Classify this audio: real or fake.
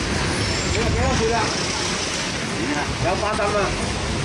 real